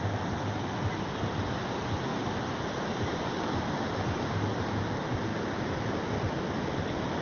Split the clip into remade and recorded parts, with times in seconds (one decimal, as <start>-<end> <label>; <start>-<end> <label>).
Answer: 0.0-2.1 recorded; 2.1-4.3 remade; 4.3-5.3 recorded; 5.3-7.2 remade